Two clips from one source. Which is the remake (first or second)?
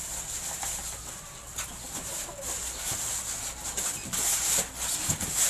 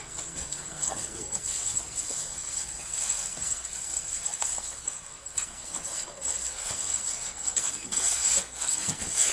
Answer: second